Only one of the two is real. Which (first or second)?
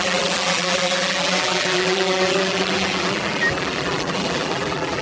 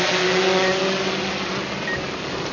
second